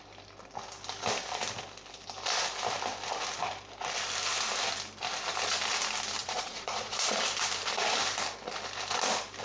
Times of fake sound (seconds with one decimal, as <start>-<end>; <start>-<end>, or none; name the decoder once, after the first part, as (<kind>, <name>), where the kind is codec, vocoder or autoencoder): 6.2-7.2 (vocoder, Vocos)